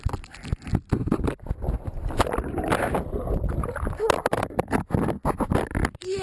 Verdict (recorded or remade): recorded